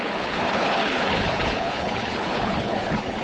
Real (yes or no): no